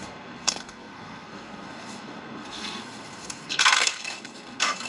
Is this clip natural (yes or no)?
no